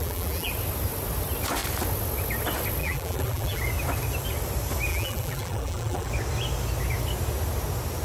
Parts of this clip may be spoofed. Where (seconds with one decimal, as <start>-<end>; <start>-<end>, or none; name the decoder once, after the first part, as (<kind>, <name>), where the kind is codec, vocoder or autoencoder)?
0.0-0.5 (vocoder, BigVGAN v2); 2.8-3.6; 4.9-6.1